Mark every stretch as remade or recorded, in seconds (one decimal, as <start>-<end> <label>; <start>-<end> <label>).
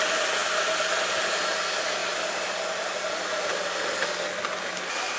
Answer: 0.0-5.2 recorded